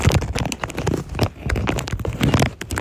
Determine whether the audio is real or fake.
real